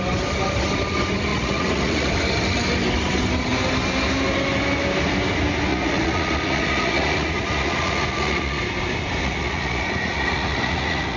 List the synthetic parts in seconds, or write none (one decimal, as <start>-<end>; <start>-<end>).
1.3-2.1; 5.7-8.6; 9.2-11.2